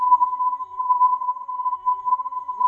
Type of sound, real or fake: fake